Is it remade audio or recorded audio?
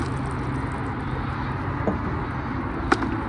recorded